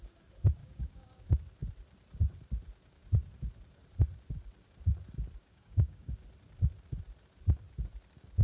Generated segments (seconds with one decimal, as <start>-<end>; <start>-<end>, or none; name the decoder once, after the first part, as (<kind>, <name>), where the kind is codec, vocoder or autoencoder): 0.6-1.2 (codec, DAC); 5.4-6.1